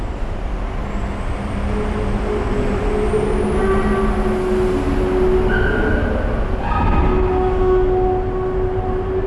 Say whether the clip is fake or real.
real